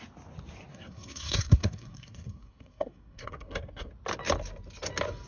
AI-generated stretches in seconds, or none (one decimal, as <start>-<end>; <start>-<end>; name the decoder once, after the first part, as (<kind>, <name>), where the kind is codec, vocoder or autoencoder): 0.7-3.9 (codec, SNAC)